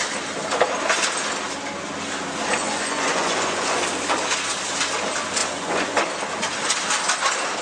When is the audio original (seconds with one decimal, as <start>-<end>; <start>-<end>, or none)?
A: 0.0-2.5; 3.8-5.4; 6.0-7.6